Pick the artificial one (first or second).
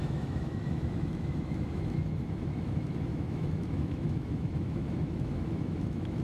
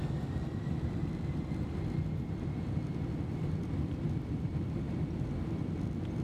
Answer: first